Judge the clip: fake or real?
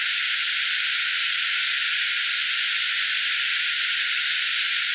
real